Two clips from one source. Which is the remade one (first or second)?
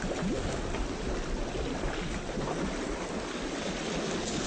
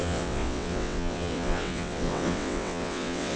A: second